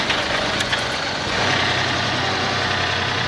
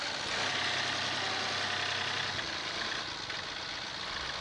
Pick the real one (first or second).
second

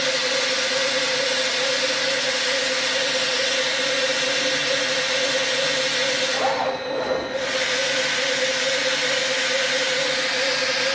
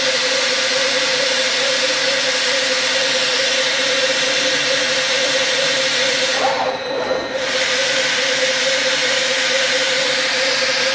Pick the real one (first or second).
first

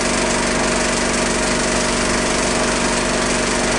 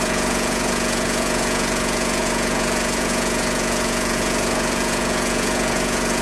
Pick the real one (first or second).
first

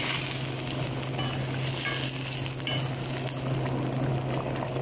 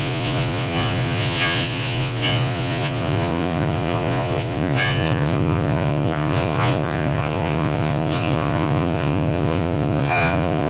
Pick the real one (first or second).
first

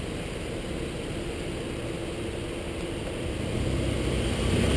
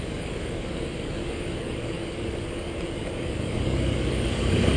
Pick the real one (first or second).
first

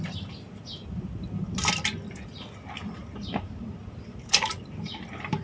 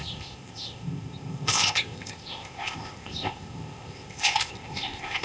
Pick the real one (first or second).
first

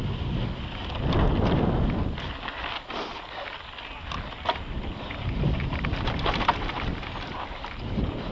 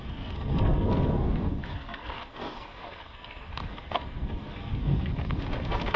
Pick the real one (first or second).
first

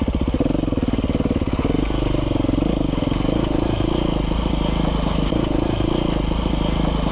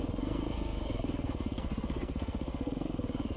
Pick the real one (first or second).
first